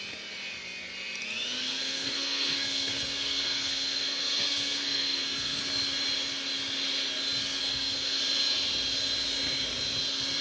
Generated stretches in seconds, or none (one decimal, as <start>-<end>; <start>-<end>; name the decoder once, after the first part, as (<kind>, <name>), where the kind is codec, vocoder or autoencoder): 1.6-5.6 (codec, SNAC); 7.6-8.2